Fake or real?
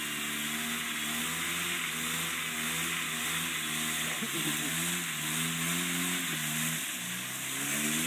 real